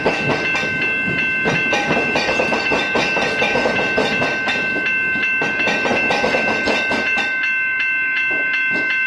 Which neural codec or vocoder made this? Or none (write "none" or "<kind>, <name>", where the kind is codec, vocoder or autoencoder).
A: none